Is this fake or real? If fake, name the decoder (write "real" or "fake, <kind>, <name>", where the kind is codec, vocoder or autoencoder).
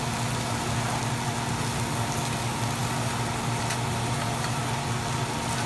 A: real